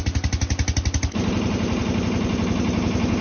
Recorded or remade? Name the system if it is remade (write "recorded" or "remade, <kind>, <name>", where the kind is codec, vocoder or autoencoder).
recorded